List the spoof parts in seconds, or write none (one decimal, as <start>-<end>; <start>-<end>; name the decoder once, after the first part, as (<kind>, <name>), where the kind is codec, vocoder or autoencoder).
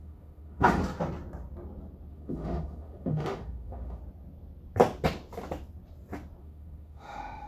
0.0-0.8 (autoencoder, DAC-VAE); 2.1-4.0; 6.4-7.5